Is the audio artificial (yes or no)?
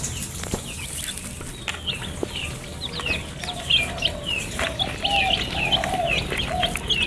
no